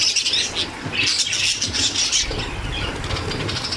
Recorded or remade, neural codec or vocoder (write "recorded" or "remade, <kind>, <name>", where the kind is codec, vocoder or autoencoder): recorded